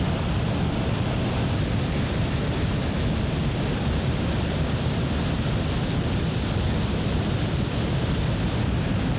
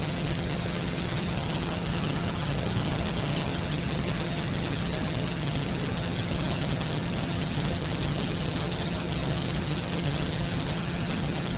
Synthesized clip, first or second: second